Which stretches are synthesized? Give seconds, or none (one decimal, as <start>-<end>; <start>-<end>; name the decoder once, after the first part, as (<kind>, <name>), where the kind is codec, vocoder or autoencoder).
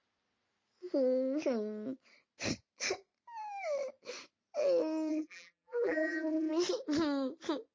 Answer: 5.1-6.5 (vocoder, BigVGAN v2)